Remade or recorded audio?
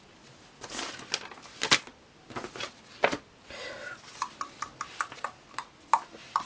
recorded